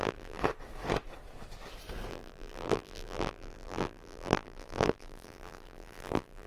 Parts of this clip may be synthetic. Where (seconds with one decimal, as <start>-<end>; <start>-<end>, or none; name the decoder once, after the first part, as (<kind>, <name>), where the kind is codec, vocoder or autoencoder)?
0.0-0.4 (vocoder, BigVGAN v2); 2.1-6.5